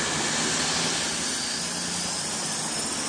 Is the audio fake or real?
real